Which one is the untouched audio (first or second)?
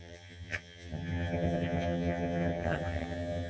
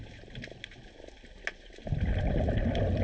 second